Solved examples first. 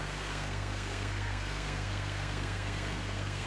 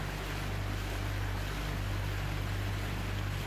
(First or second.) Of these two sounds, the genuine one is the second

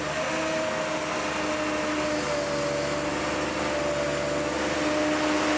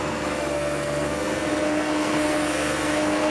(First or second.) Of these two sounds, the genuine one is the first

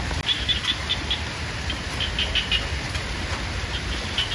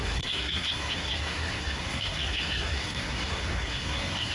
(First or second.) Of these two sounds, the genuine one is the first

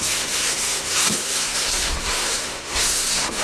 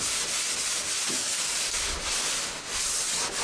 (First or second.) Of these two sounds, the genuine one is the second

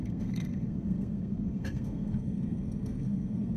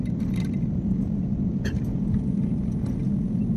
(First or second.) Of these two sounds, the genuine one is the second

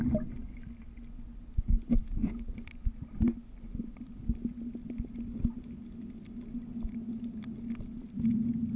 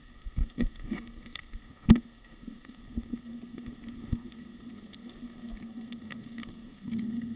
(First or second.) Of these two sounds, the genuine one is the first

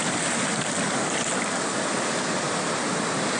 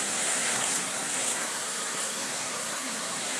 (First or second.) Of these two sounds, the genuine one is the first